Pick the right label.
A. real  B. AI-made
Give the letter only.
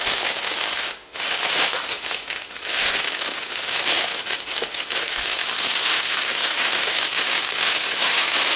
B